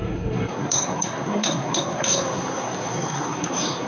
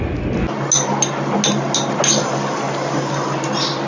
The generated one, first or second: first